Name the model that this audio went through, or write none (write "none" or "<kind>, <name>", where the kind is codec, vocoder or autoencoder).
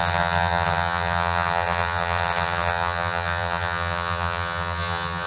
vocoder, HiFi-GAN